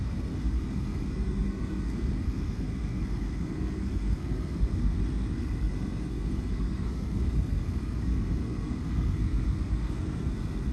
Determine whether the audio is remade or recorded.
remade